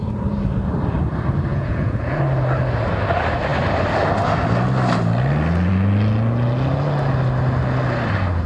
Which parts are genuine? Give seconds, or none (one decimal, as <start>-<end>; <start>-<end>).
0.0-1.5; 2.2-8.5